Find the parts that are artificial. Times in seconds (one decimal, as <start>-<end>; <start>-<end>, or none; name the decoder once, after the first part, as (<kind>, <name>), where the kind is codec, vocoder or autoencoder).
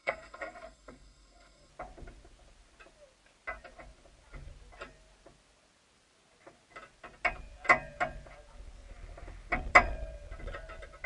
0.0-1.7 (codec, SNAC)